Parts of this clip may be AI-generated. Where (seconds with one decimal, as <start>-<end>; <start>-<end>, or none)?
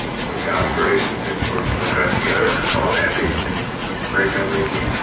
0.0-0.9; 2.2-4.1